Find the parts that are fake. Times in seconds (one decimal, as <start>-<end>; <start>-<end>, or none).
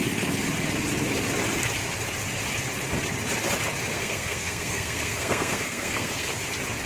3.9-6.3